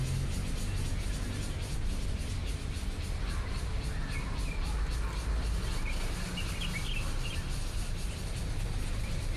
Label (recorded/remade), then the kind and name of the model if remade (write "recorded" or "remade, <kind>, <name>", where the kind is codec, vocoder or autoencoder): recorded